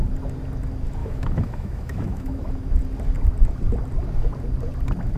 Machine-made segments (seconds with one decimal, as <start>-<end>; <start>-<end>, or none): 1.0-2.5